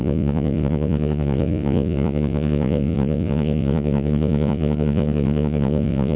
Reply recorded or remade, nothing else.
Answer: remade